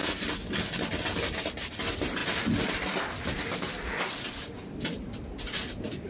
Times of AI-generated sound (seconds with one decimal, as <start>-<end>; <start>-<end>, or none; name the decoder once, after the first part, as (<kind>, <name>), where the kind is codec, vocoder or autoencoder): none